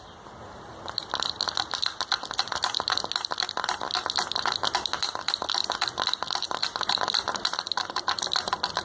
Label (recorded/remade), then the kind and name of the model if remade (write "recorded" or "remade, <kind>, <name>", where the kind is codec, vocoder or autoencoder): recorded